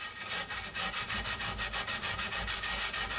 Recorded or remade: recorded